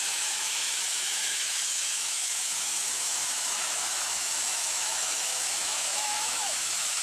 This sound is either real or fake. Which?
fake